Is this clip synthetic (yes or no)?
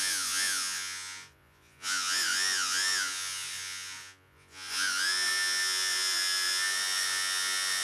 yes